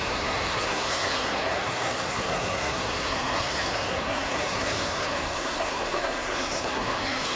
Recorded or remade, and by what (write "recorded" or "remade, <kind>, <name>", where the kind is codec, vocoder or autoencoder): remade, codec, SNAC